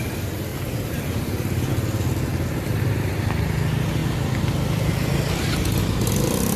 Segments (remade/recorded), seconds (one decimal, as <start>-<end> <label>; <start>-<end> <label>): 0.0-0.5 recorded; 0.5-1.7 remade; 1.7-6.6 recorded